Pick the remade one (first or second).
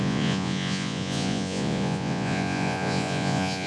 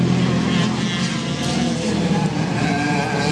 first